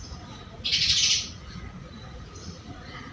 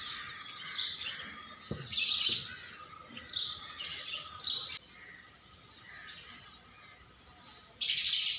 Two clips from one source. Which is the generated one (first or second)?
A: first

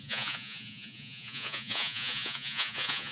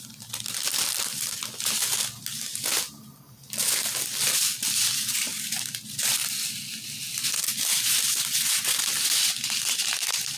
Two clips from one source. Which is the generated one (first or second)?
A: first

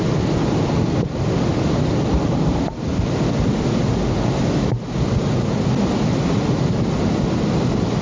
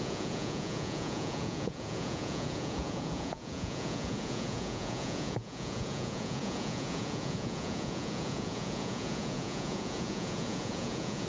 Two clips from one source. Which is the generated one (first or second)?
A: second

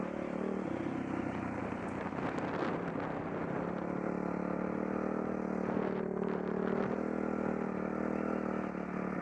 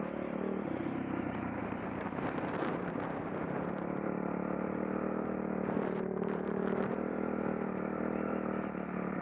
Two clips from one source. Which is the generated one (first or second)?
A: second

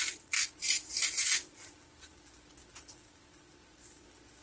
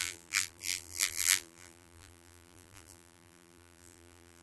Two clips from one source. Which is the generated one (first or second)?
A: second